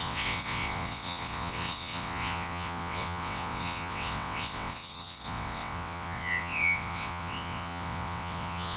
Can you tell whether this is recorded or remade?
remade